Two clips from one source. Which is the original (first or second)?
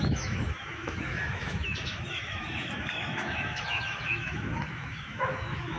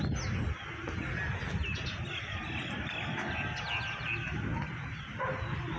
second